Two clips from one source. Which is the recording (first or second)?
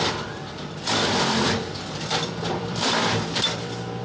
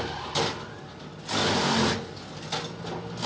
second